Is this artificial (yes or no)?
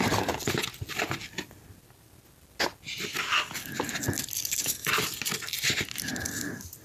no